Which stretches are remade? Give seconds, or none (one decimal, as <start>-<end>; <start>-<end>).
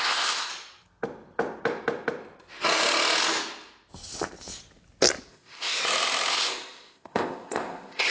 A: 0.0-0.5; 5.3-5.8; 6.3-8.1